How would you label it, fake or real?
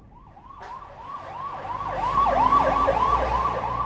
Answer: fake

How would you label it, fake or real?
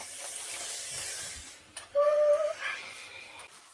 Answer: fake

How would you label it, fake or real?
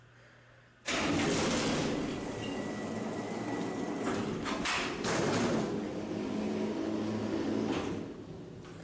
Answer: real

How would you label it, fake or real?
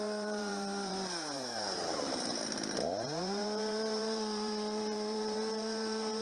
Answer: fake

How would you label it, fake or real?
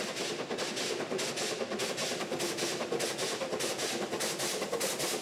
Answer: real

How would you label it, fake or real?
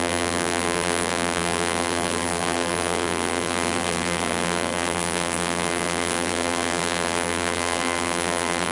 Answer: fake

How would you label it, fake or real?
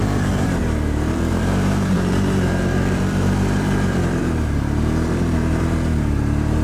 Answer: fake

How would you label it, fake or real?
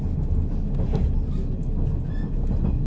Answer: real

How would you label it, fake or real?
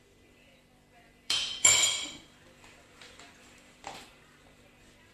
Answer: fake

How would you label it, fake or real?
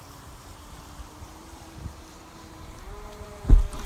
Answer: fake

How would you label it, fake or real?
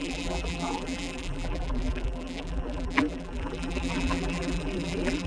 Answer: fake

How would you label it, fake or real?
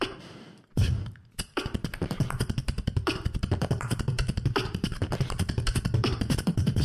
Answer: fake